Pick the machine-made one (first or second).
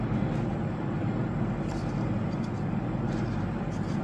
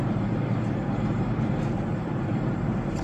second